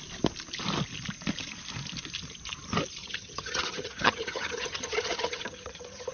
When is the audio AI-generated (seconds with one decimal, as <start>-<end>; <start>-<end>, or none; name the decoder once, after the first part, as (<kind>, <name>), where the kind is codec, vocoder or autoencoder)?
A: 3.0-6.1 (vocoder, HiFi-GAN)